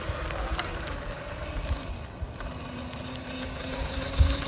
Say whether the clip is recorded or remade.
recorded